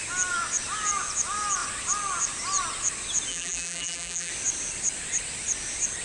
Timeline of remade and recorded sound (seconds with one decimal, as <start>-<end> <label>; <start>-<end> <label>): 0.0-3.3 recorded; 3.3-4.3 remade; 4.3-6.0 recorded